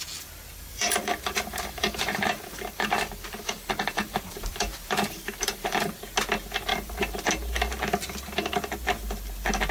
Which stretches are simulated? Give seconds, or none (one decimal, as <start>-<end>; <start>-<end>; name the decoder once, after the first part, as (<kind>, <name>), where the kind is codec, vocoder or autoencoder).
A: 0.7-5.9 (vocoder, BigVGAN v2); 6.7-7.3

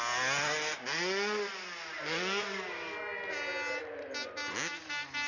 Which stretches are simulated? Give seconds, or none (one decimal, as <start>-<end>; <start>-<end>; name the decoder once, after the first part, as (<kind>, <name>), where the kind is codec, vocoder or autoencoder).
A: none